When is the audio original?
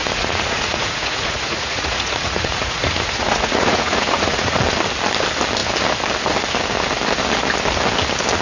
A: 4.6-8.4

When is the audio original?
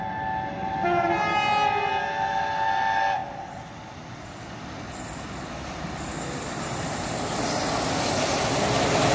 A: 0.0-9.1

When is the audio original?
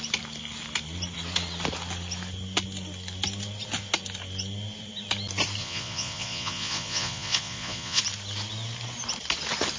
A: 0.0-5.6; 8.0-9.8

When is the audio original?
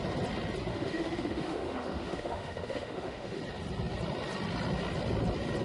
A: 0.0-0.7; 3.4-5.6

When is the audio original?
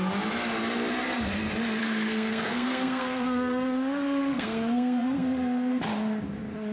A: 0.0-1.8; 5.8-6.7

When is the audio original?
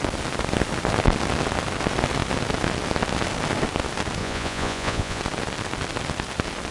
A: 0.0-4.2; 5.2-6.7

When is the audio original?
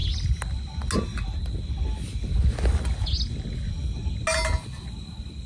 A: 0.0-5.5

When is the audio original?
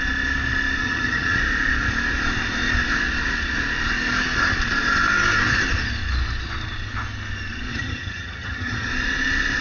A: 0.0-0.8; 1.4-7.7; 8.9-9.6